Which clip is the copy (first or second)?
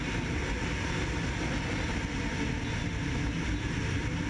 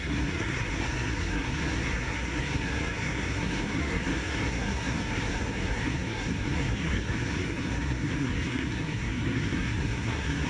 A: second